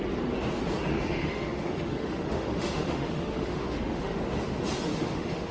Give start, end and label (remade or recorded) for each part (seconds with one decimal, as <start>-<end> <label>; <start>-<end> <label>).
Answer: 0.0-0.9 recorded; 0.9-4.2 remade; 4.2-4.9 recorded; 4.9-5.5 remade